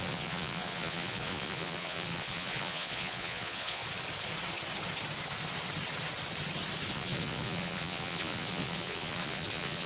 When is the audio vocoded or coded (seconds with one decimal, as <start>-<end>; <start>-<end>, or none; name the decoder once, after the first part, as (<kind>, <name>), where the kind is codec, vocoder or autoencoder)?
0.0-3.8 (vocoder, Vocos); 6.9-9.9